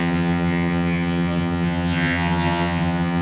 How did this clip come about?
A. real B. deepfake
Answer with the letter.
B